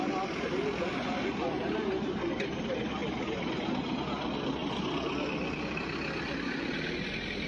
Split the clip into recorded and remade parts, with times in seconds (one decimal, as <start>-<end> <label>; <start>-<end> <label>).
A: 0.0-7.5 recorded